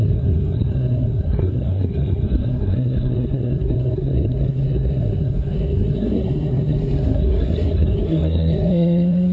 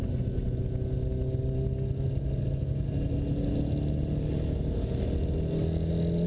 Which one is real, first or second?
second